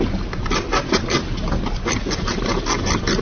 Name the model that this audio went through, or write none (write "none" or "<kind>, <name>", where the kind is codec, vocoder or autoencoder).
none